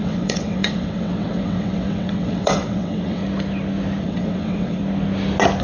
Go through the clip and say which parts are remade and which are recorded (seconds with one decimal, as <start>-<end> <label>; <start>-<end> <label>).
0.0-3.2 remade; 3.2-4.0 recorded; 4.0-4.8 remade; 4.8-5.6 recorded